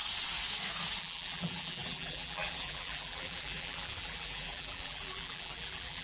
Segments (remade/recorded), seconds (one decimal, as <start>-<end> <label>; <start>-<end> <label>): 0.0-1.0 recorded; 1.0-6.0 remade